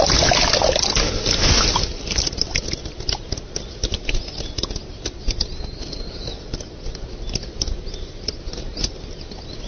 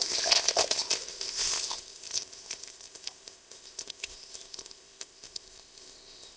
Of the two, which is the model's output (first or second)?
second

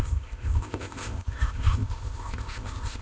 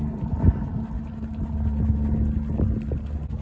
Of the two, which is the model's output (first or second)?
first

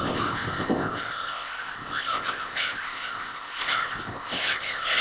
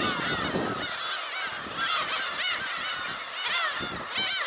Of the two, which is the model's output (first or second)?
first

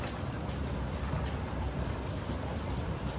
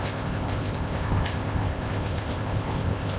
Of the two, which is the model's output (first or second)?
second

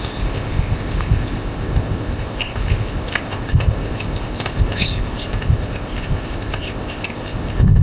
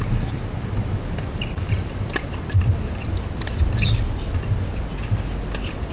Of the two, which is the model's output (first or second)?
first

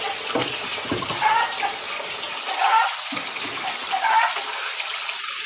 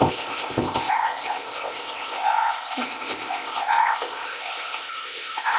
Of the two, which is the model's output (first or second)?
second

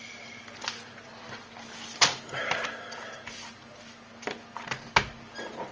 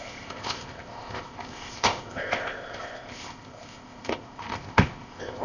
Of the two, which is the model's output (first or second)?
second